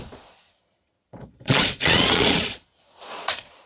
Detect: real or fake fake